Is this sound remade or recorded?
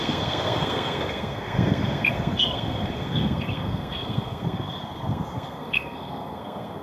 remade